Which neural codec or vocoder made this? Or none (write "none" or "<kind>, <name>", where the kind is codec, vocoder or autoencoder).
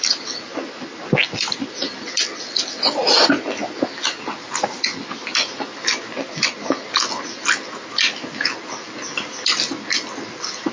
none